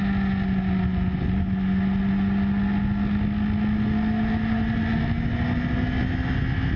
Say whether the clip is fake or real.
real